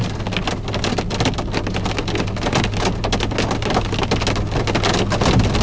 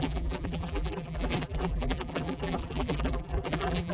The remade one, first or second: second